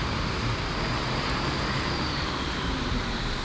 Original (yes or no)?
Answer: no